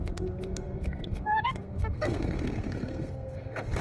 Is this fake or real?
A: fake